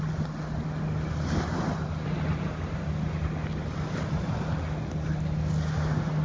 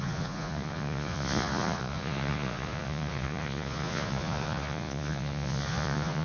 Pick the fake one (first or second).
second